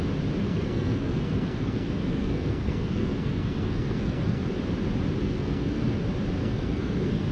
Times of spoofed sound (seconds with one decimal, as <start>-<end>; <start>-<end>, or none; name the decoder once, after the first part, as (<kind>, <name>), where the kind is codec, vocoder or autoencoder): 0.4-4.5 (codec, SNAC); 5.2-6.0; 6.4-7.3